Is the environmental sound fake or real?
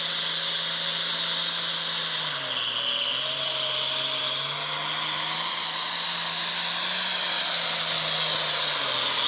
real